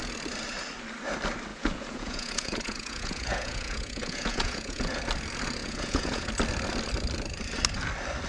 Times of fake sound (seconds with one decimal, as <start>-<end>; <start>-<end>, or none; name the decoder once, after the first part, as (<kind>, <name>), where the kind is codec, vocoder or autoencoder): 1.5-5.0 (vocoder, Vocos); 5.6-6.3